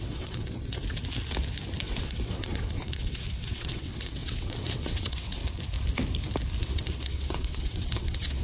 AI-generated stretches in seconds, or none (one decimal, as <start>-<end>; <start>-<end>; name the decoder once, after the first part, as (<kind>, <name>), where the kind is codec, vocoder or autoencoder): 0.0-0.8 (vocoder, WaveNeXt); 1.8-5.4; 6.6-8.4